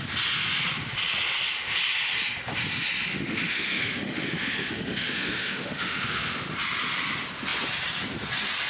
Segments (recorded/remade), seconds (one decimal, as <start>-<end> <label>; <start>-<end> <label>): 0.0-3.1 recorded; 3.1-6.5 remade; 6.5-8.7 recorded